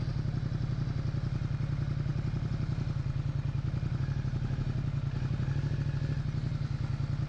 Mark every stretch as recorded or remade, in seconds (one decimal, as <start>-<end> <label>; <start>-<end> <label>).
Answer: 0.0-7.3 recorded